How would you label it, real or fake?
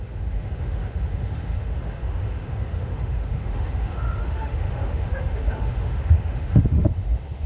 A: fake